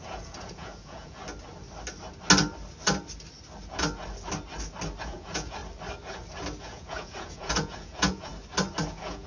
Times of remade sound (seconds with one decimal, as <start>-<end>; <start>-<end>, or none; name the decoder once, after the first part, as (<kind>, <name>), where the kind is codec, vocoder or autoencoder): 0.0-1.2 (vocoder, Vocos); 5.0-5.6; 6.6-8.3; 8.9-9.3